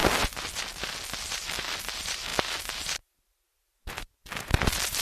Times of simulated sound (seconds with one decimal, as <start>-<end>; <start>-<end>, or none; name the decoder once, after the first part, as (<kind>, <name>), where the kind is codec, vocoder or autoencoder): none